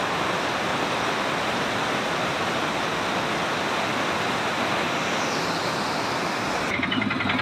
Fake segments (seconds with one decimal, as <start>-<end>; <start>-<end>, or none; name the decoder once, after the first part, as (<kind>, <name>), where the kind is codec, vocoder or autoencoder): none